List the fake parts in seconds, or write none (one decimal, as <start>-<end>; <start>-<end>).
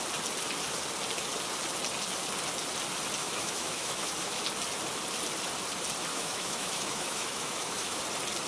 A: 3.2-4.4; 6.1-8.0